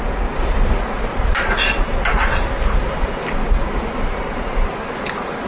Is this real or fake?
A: real